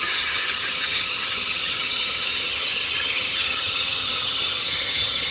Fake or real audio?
fake